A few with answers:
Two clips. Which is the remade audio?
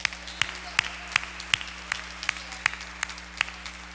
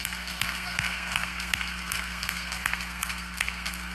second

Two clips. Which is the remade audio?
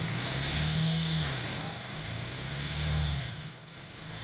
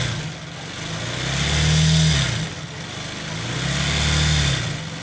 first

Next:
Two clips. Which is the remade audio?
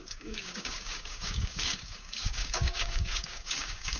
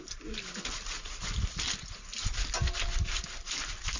first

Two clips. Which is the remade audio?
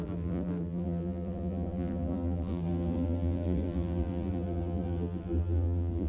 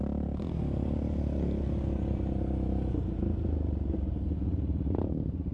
first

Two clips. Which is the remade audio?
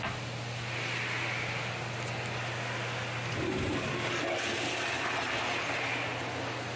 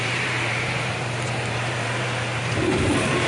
second